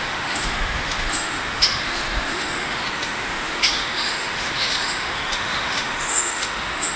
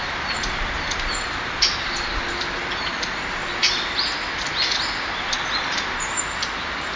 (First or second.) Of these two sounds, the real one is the second